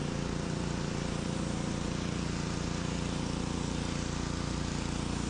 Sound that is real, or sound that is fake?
real